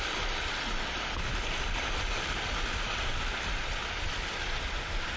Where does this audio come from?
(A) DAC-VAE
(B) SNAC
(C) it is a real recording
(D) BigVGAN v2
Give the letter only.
D